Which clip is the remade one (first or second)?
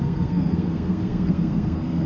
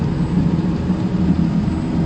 first